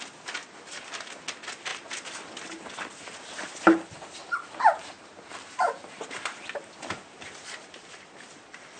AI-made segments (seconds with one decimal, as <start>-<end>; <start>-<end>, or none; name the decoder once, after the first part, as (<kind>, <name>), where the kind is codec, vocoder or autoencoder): none